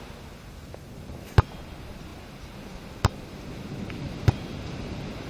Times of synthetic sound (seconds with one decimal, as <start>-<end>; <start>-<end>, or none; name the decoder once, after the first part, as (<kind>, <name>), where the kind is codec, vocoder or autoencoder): none